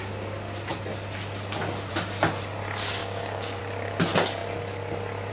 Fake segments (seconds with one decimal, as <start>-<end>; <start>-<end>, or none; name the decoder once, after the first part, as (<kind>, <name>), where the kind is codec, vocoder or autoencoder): 3.0-3.6 (codec, DAC)